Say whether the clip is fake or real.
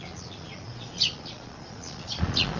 fake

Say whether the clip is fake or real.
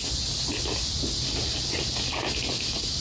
real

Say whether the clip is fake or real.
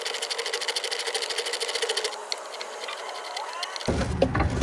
real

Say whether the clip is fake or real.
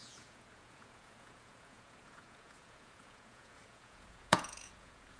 fake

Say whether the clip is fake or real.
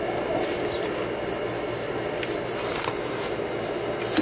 real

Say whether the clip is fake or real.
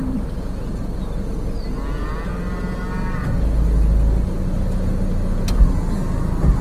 real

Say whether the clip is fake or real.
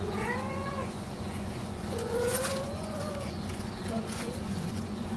fake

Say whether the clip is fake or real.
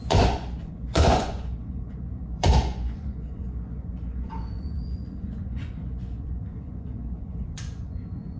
fake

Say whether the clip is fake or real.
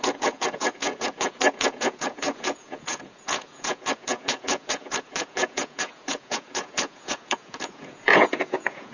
fake